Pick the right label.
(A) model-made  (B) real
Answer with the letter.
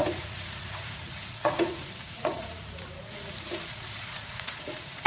A